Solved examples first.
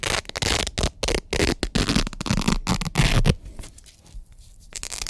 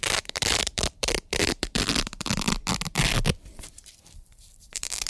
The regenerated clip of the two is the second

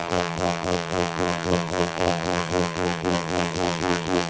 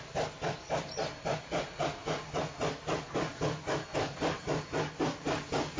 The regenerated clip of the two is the first